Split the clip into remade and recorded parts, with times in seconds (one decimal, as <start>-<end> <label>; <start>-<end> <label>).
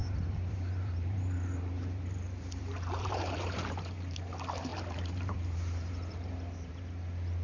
0.0-4.3 remade; 4.3-4.7 recorded; 4.7-6.8 remade; 6.8-7.4 recorded